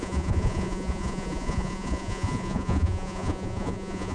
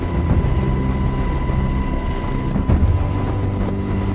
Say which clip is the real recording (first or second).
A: second